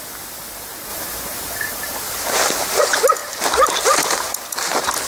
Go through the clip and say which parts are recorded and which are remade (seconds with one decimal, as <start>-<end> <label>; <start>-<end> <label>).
0.0-0.9 recorded; 0.9-2.8 remade; 2.8-3.2 recorded; 3.2-5.1 remade